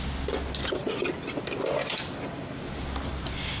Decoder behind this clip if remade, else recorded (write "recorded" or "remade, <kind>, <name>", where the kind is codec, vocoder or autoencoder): recorded